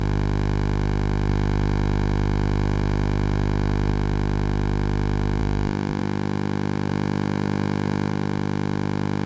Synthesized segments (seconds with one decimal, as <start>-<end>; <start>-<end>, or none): 1.3-3.9; 6.9-8.1